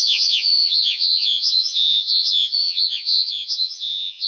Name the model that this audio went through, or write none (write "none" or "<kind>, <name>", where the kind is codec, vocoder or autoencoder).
vocoder, Vocos